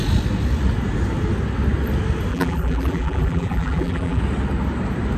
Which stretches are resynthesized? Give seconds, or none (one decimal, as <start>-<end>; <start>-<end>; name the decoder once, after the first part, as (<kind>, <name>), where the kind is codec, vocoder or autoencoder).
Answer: 2.3-4.2 (vocoder, BigVGAN v2)